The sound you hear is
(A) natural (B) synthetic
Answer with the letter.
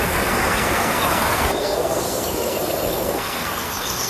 B